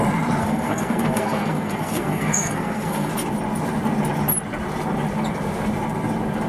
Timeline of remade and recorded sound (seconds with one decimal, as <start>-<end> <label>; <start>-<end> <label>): 0.0-0.4 recorded; 0.4-3.1 remade; 3.1-6.5 recorded